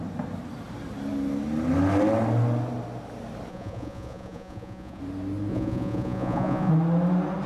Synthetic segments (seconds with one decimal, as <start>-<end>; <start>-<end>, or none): 3.5-5.0; 5.5-6.7